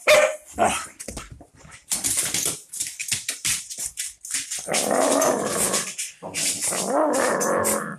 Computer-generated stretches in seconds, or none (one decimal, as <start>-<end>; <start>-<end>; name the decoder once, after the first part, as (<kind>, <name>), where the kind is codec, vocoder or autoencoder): 0.6-1.2 (vocoder, BigVGAN v2); 1.8-2.5; 3.0-3.9